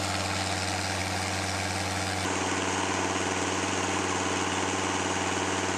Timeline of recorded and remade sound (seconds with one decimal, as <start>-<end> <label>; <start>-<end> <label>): 0.0-5.8 recorded